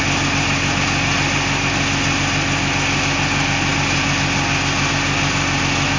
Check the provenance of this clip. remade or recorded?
recorded